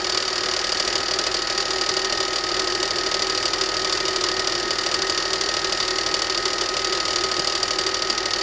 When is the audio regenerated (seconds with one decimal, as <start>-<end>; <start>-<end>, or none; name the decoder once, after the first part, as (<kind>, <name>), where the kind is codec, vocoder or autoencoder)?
none